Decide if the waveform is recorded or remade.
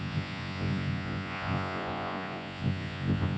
remade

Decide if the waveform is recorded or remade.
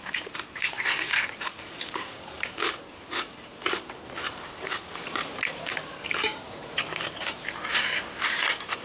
remade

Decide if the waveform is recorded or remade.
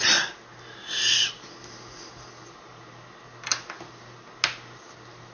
recorded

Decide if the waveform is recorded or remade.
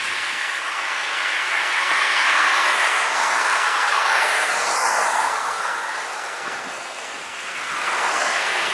remade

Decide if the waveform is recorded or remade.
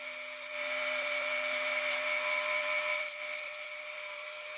remade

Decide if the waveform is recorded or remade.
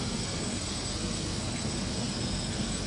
remade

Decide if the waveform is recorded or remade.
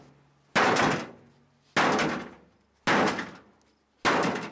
recorded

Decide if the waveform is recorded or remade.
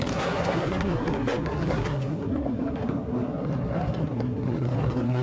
remade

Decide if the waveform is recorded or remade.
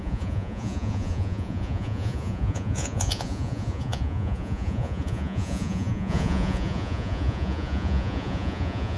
remade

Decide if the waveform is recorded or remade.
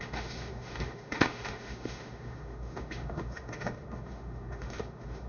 remade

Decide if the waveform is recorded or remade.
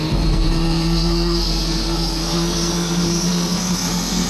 remade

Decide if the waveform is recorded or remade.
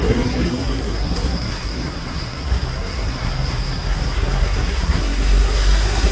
remade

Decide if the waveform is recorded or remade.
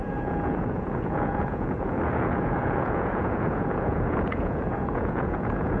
remade